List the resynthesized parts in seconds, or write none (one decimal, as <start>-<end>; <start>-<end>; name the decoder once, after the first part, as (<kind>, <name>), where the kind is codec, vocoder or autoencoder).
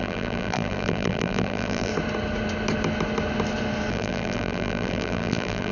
0.0-1.9 (vocoder, BigVGAN v2); 3.9-5.7